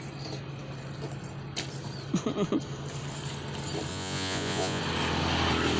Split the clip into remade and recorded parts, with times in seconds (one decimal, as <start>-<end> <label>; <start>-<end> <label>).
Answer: 0.0-3.9 recorded; 3.9-4.8 remade; 4.8-5.8 recorded